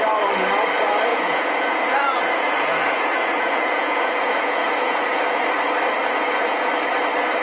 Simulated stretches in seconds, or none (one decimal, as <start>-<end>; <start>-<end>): 1.1-5.5; 6.0-6.7